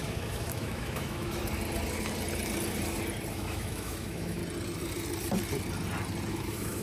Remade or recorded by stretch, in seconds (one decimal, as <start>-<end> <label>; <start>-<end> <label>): 0.0-1.4 remade; 1.4-3.3 recorded; 3.3-4.4 remade; 4.4-6.3 recorded; 6.3-6.8 remade